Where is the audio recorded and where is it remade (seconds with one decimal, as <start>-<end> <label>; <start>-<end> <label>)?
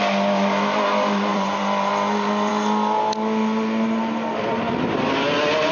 0.0-1.3 recorded; 1.3-1.9 remade; 1.9-5.7 recorded